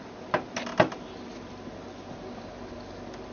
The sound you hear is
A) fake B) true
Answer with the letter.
B